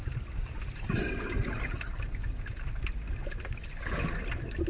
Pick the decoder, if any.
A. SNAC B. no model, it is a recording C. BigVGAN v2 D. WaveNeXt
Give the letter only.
B